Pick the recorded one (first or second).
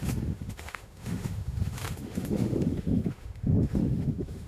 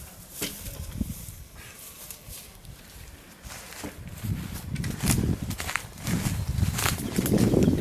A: second